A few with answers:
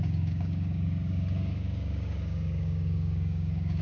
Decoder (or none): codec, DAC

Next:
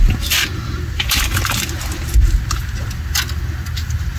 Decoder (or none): none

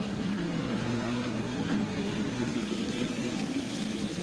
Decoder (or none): codec, SNAC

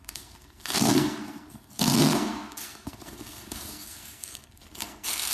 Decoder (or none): codec, SNAC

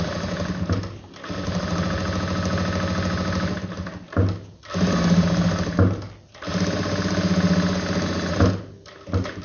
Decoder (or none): none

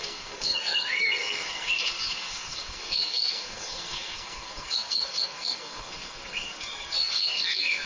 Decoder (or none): codec, SNAC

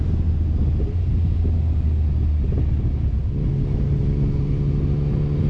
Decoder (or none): none